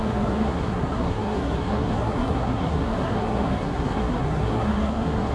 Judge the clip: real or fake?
fake